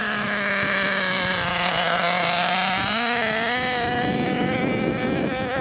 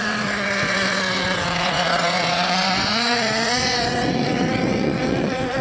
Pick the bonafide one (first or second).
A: first